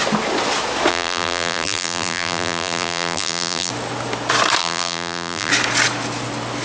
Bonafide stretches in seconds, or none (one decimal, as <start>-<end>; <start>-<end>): 0.0-0.9; 3.7-4.6; 5.5-6.6